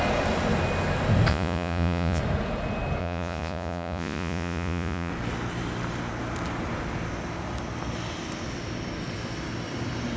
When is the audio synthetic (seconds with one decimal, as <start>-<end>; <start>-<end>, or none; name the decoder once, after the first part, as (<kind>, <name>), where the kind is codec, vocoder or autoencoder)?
1.3-2.2 (vocoder, Vocos); 3.0-5.1